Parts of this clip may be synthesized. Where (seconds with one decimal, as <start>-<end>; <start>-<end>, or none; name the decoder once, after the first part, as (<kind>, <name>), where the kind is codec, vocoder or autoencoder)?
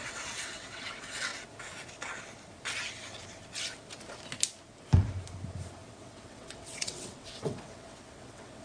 0.0-1.3 (vocoder, WaveNeXt); 5.9-8.6